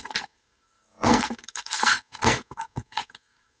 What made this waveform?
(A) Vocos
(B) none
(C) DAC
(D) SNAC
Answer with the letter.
D